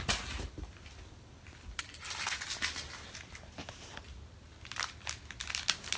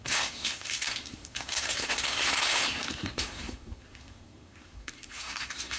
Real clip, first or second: first